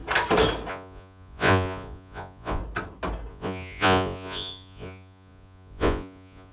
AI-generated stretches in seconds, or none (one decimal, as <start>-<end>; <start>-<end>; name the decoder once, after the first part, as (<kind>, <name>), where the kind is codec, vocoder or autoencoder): 0.7-2.6 (vocoder, Vocos); 3.3-6.5